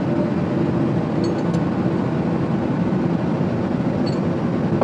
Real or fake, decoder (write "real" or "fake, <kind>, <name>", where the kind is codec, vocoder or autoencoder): real